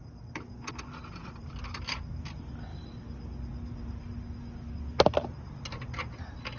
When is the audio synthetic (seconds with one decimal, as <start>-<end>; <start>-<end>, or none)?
1.2-2.2